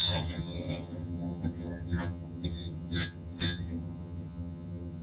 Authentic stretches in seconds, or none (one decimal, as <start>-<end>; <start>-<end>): none